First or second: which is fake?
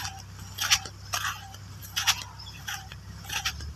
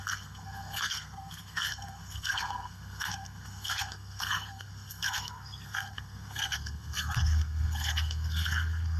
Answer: second